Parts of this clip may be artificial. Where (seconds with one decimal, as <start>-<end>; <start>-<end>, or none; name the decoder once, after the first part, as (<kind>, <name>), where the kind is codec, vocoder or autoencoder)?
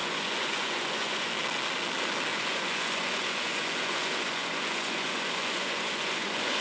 0.0-1.3 (vocoder, Vocos); 2.3-6.6